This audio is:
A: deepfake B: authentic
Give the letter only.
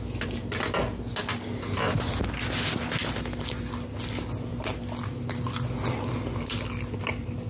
B